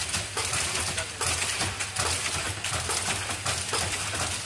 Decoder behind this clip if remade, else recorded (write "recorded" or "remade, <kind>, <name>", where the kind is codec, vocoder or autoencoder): recorded